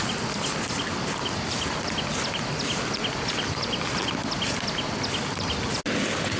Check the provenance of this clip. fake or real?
real